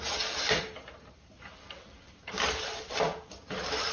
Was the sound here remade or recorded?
recorded